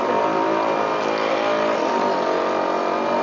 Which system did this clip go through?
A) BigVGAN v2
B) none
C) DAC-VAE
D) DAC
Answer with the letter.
B